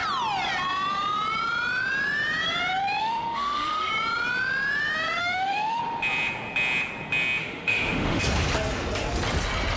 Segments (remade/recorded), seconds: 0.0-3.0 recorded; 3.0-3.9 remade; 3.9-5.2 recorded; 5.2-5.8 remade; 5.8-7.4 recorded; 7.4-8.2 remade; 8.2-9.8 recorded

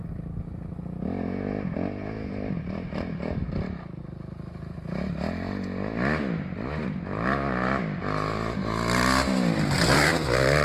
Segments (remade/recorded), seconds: 0.0-10.6 recorded

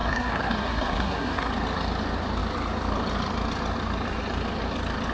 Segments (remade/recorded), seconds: 0.0-1.5 remade; 1.5-5.1 recorded

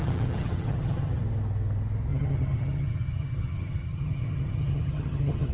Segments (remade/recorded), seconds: 0.0-1.2 remade; 1.2-2.1 recorded; 2.1-5.5 remade

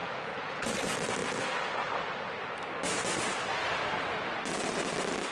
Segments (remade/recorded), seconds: 0.0-0.6 remade; 0.6-5.3 recorded